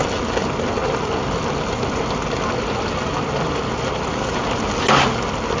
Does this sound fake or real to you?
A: real